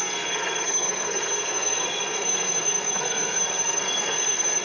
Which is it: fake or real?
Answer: fake